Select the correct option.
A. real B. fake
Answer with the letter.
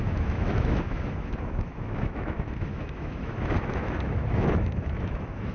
B